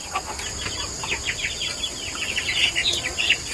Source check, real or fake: real